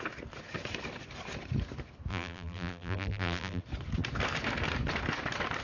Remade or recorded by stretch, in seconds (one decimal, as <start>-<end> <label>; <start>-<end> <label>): 0.0-2.1 recorded; 2.1-3.6 remade; 3.6-5.6 recorded